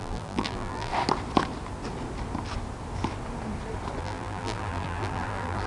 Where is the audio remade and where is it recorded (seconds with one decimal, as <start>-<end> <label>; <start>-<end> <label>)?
0.0-0.9 remade; 0.9-4.0 recorded; 4.0-5.7 remade